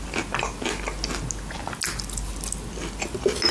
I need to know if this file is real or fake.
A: real